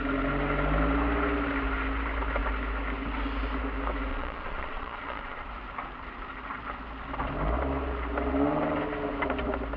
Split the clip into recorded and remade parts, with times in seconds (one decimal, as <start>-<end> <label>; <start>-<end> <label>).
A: 0.0-4.1 recorded; 4.1-5.5 remade; 5.5-9.8 recorded